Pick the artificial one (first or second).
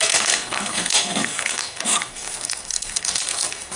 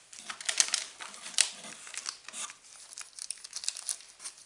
first